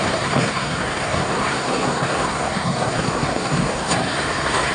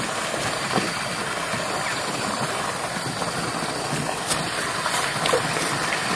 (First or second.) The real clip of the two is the second